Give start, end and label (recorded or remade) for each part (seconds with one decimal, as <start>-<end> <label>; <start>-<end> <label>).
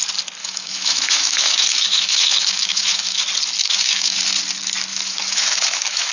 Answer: 0.0-0.4 recorded; 0.4-3.2 remade; 3.2-3.6 recorded; 3.6-4.2 remade; 4.2-4.9 recorded; 4.9-6.1 remade